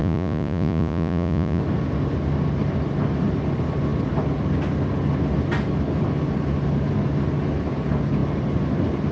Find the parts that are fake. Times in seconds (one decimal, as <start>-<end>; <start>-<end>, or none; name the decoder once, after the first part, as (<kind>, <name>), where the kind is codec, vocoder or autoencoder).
0.0-1.6 (vocoder, Vocos)